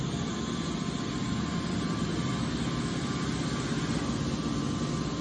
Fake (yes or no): no